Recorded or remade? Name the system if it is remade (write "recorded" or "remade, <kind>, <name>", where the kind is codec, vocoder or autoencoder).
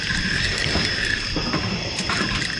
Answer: recorded